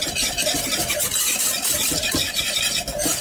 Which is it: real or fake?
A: fake